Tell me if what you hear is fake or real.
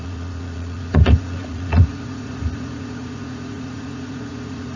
fake